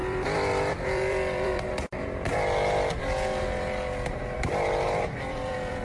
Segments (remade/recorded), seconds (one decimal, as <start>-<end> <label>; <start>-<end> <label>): 0.0-2.3 remade; 2.3-3.0 recorded; 3.0-5.8 remade